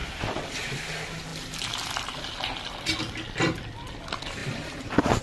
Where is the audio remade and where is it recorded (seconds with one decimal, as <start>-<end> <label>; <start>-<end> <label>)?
0.0-4.4 recorded; 4.4-5.2 remade